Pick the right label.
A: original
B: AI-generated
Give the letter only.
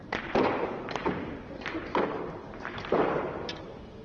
B